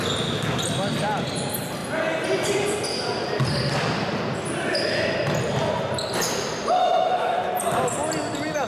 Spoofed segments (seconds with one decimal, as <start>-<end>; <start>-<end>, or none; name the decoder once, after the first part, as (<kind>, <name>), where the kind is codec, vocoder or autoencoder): 6.8-7.5 (autoencoder, DAC-VAE)